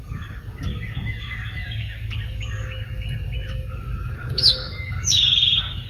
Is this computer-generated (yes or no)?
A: yes